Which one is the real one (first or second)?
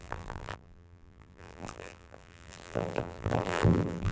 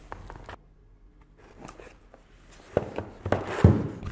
second